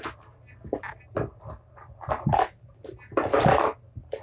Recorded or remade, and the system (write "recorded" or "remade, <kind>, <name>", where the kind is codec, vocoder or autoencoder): recorded